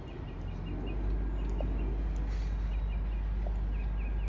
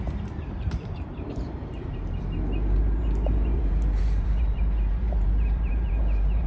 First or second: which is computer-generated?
second